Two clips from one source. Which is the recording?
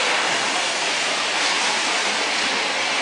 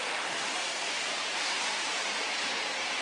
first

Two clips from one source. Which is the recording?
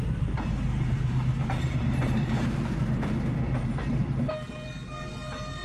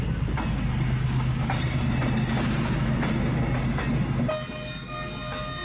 second